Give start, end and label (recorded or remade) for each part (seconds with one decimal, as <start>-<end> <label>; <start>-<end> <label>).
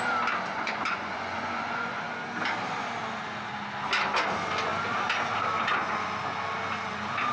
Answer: 0.0-0.5 recorded; 0.5-2.0 remade; 2.0-7.3 recorded